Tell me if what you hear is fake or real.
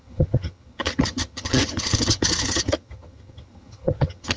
fake